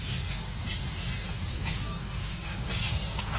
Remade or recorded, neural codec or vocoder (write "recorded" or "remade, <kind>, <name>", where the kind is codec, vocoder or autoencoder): remade, codec, DAC